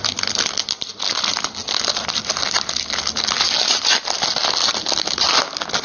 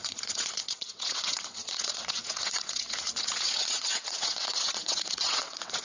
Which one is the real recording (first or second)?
first